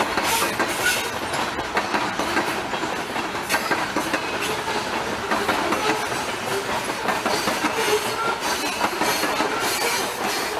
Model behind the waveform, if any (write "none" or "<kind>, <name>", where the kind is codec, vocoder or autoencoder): none